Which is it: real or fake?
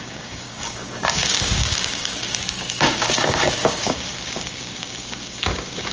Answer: fake